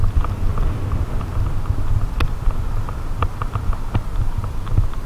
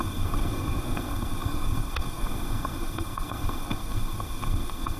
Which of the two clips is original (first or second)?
first